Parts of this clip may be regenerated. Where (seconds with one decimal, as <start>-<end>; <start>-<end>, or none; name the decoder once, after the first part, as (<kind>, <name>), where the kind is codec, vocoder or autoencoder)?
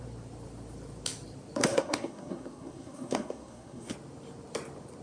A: 1.6-3.9 (codec, SNAC)